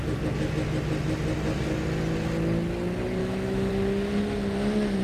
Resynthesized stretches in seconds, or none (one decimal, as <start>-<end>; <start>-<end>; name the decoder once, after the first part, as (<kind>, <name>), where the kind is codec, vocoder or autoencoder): 3.2-3.7 (autoencoder, DAC-VAE)